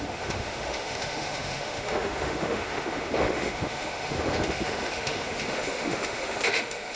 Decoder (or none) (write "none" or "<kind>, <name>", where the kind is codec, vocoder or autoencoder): autoencoder, DAC-VAE